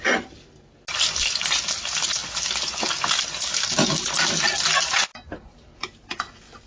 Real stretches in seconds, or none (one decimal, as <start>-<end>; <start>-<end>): 0.0-6.7